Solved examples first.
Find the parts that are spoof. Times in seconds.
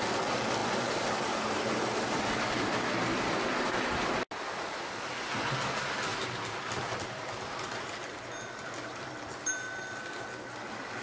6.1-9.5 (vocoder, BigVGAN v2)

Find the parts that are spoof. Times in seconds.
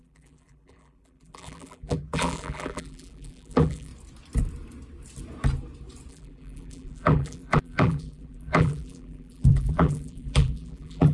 0.0-3.9 (vocoder, BigVGAN v2); 6.1-11.1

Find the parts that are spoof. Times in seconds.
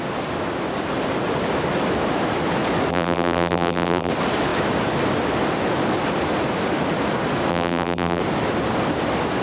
2.9-4.1 (vocoder, BigVGAN v2); 7.5-8.2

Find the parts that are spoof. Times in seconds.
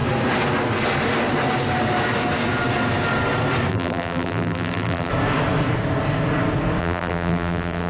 3.7-5.1 (vocoder, BigVGAN v2); 6.8-7.9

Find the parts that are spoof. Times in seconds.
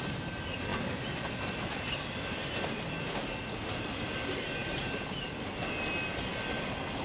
0.7-2.8 (vocoder, BigVGAN v2)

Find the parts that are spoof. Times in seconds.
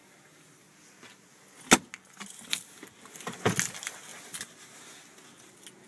none